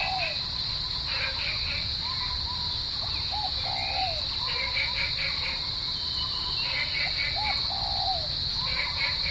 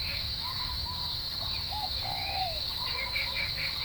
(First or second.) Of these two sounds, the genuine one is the first